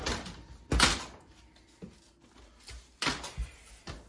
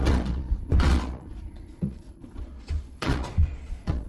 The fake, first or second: second